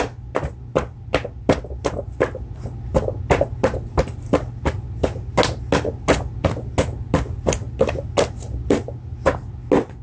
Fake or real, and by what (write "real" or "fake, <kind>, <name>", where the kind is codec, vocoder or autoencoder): real